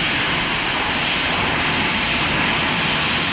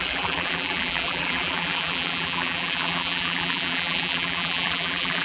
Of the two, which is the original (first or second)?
first